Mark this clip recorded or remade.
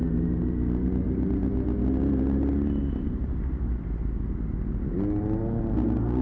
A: recorded